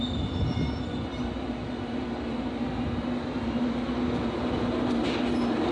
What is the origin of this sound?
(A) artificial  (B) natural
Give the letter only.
B